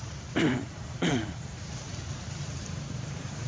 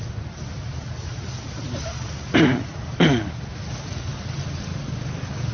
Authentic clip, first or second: second